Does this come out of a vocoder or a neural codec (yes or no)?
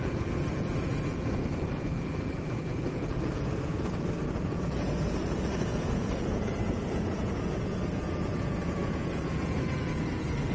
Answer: yes